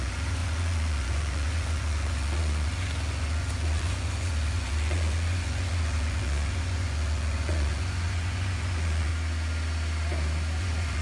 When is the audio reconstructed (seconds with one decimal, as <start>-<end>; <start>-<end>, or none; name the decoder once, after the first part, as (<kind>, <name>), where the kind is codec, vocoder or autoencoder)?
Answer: 0.0-9.1 (vocoder, Vocos); 10.6-11.0